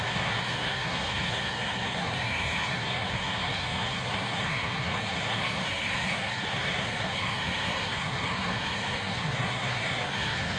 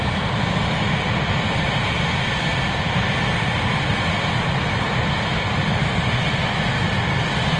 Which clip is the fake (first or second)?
first